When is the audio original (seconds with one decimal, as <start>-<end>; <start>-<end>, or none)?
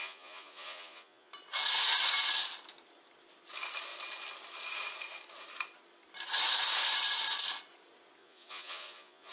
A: 1.3-8.2